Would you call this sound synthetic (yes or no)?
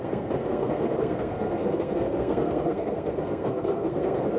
yes